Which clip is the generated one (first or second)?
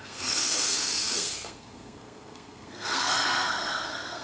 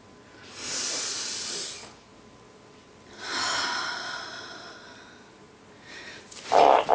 first